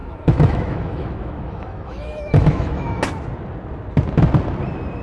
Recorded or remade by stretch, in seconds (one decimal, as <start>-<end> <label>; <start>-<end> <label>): 0.0-3.0 remade; 3.0-5.0 recorded

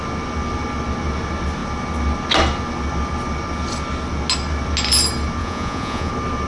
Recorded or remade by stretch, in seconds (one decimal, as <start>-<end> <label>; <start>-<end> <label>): 0.0-5.4 recorded; 5.4-6.1 remade; 6.1-6.5 recorded

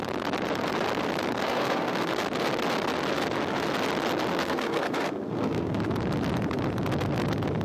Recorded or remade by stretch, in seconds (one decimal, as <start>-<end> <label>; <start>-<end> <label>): 0.0-1.4 recorded; 1.4-2.1 remade; 2.1-4.3 recorded; 4.3-5.9 remade; 5.9-7.6 recorded

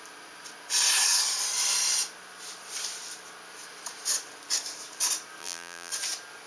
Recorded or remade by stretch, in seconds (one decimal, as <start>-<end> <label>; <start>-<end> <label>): 0.0-5.4 recorded; 5.4-5.9 remade; 5.9-6.5 recorded

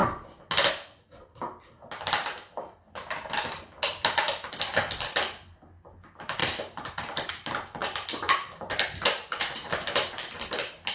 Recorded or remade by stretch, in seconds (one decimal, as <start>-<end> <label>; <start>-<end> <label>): 0.0-6.4 recorded; 6.4-7.3 remade; 7.3-7.8 recorded; 7.8-9.9 remade; 9.9-10.9 recorded

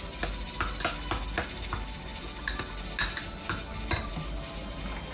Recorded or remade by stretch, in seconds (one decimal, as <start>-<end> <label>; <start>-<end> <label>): 0.0-5.1 recorded

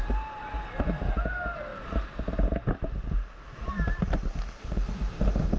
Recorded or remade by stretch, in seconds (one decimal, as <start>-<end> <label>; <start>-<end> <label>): 0.0-4.6 recorded; 4.6-5.6 remade